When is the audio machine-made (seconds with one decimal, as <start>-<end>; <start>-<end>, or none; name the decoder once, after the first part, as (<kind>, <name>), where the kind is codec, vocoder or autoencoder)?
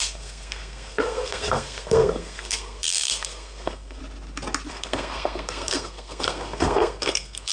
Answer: 0.0-4.0 (codec, SNAC); 4.7-7.5